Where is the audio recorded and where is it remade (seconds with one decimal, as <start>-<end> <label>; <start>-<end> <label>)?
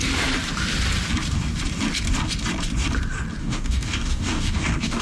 0.0-3.4 recorded; 3.4-5.0 remade